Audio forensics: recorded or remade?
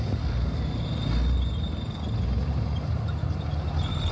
recorded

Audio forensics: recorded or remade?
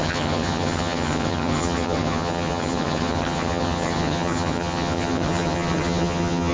remade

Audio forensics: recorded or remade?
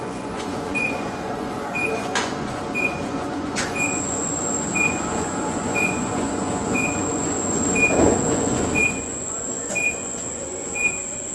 remade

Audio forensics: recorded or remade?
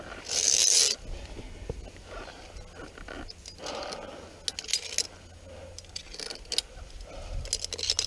recorded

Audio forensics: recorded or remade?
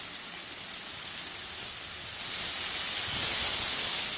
recorded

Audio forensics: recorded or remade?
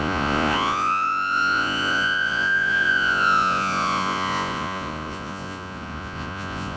remade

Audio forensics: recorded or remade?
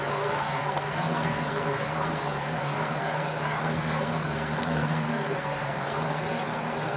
remade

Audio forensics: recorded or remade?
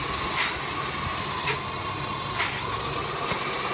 recorded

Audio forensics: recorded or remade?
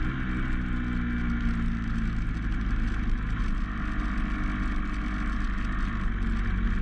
recorded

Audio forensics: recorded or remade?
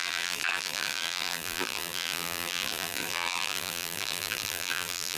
remade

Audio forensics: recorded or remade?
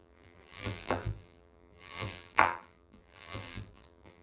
remade